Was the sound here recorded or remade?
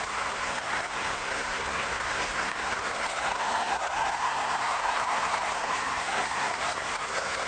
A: remade